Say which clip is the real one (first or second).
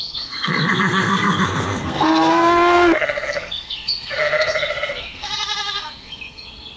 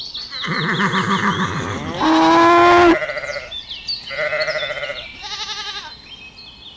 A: second